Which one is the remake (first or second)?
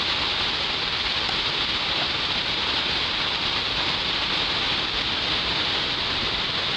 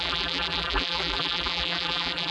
second